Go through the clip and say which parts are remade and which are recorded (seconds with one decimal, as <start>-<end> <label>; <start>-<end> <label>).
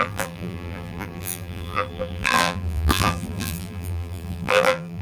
0.0-5.0 remade